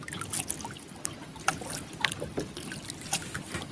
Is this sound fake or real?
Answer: real